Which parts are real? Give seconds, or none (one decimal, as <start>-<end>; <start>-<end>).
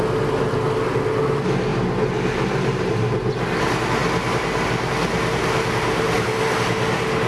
0.0-1.7; 3.3-7.3